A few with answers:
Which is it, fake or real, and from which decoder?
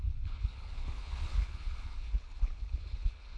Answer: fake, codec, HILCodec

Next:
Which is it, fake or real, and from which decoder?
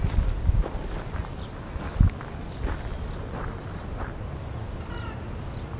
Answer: real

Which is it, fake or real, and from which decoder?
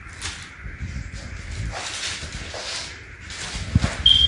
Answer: real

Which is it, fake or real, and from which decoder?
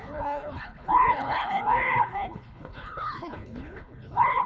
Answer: fake, codec, HILCodec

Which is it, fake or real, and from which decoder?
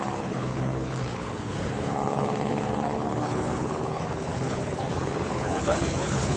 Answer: fake, codec, HILCodec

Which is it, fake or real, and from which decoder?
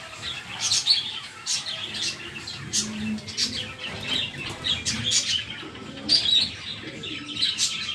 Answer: real